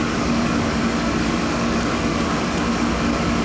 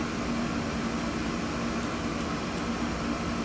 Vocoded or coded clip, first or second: first